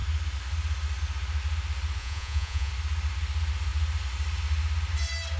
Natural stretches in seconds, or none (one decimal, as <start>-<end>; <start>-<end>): 0.0-2.0; 2.7-5.4